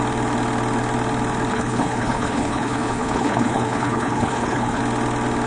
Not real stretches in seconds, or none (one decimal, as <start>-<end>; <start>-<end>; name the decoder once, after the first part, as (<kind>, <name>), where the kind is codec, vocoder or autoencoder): 1.5-4.8 (codec, HILCodec)